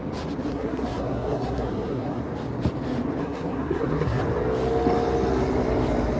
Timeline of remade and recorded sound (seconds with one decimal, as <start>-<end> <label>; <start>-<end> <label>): 0.0-0.5 recorded; 0.5-2.2 remade; 2.2-3.2 recorded; 3.2-4.2 remade; 4.2-6.2 recorded